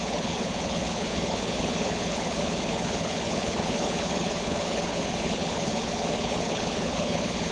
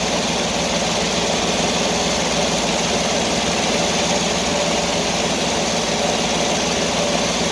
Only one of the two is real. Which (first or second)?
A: second